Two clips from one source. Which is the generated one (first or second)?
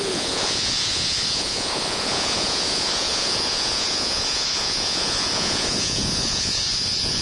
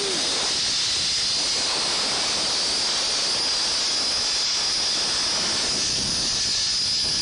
first